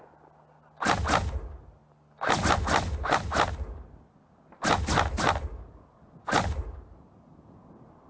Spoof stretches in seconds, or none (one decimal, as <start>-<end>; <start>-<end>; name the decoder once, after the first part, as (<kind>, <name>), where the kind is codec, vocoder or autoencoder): none